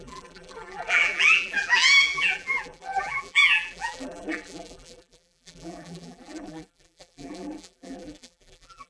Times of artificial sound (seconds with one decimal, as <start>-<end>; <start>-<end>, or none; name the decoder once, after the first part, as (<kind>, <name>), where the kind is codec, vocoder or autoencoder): 0.0-8.9 (vocoder, BigVGAN v2)